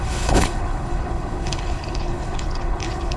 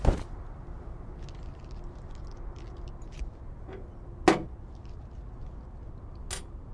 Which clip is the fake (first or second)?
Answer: first